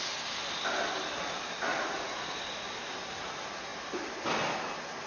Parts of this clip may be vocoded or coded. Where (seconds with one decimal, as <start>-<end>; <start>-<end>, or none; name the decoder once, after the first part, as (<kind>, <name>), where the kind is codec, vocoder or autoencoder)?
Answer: 1.7-2.4 (vocoder, Vocos)